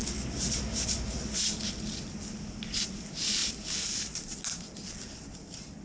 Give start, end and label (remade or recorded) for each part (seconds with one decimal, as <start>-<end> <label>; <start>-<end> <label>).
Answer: 0.0-5.8 recorded